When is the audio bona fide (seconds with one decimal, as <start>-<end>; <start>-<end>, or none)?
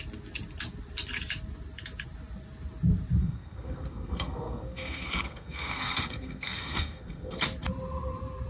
0.0-3.2; 7.4-8.5